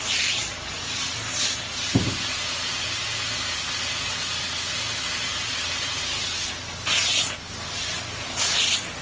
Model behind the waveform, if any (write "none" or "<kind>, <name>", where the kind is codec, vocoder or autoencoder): none